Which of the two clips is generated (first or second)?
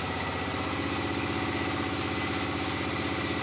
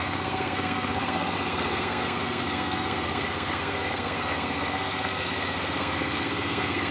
second